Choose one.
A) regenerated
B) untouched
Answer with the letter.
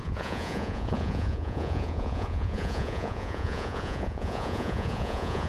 A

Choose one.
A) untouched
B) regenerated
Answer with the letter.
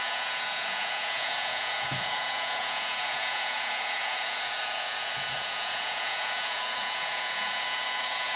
B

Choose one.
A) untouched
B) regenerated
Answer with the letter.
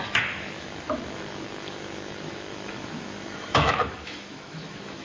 B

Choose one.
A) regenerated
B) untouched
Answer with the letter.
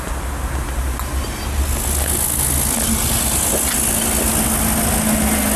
B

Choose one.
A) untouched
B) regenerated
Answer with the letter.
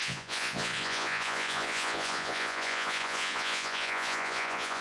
B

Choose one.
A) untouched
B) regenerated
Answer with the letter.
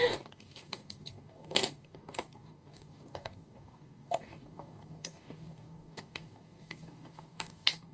B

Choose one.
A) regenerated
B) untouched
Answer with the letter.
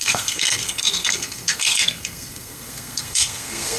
A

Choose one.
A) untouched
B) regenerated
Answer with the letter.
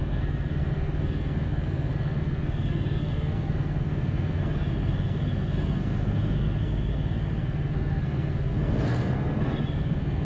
B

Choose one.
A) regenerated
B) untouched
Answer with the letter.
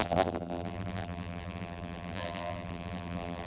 A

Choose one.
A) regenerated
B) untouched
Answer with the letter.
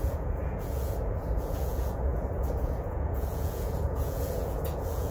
A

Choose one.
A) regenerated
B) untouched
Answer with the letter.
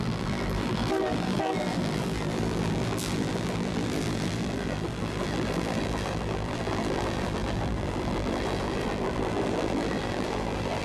A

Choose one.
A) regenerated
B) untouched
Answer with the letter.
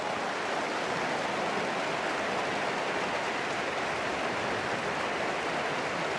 B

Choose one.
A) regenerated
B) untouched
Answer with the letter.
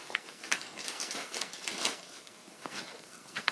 A